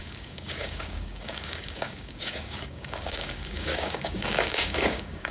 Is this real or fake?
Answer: fake